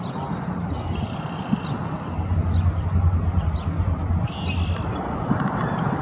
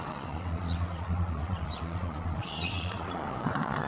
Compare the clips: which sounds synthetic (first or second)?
second